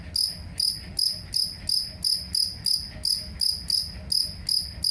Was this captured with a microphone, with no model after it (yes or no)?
yes